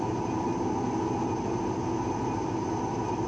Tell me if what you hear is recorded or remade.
recorded